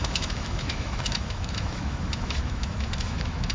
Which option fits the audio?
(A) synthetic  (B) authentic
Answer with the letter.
A